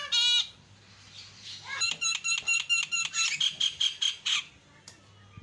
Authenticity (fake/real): real